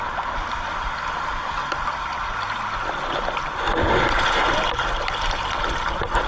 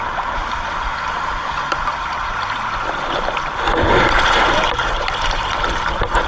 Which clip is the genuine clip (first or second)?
first